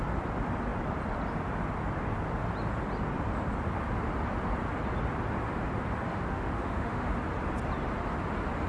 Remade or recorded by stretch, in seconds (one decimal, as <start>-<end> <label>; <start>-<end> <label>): 0.0-6.1 recorded; 6.1-7.1 remade; 7.1-8.7 recorded